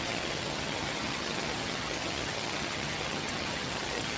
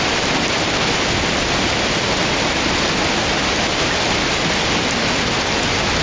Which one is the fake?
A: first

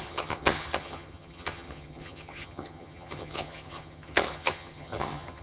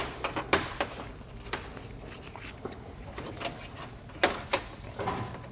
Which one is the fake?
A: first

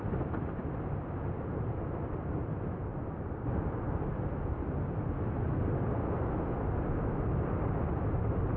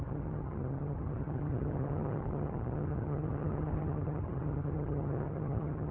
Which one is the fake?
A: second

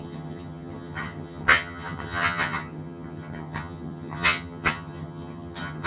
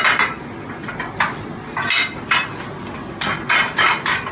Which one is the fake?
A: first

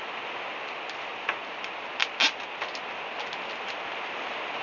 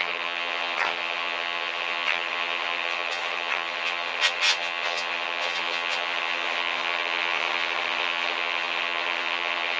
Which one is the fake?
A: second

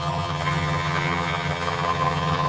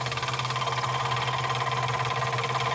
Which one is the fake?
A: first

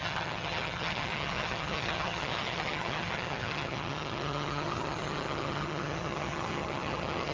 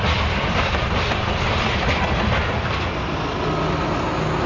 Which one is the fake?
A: first